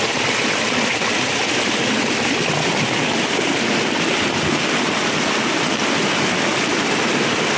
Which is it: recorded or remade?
recorded